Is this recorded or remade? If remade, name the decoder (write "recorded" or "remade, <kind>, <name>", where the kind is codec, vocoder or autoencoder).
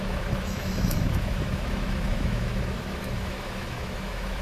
remade, autoencoder, DAC-VAE